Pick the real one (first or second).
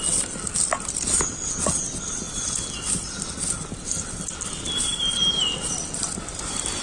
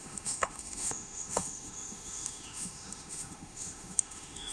first